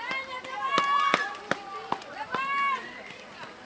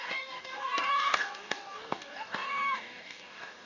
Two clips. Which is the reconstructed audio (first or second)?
second